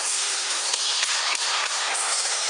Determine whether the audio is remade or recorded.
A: remade